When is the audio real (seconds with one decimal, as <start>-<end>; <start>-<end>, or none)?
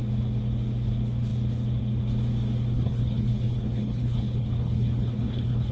0.0-2.7